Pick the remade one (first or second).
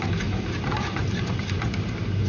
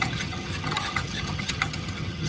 second